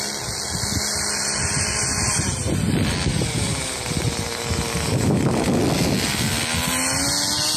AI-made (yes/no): no